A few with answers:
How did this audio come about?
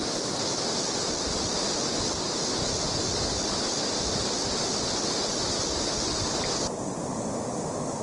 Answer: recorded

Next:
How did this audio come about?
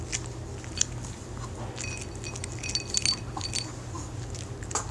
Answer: recorded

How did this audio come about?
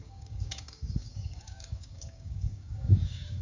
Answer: remade